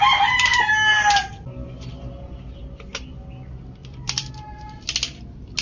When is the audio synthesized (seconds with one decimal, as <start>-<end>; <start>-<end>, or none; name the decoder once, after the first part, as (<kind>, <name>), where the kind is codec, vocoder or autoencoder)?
3.8-4.3 (vocoder, BigVGAN v2)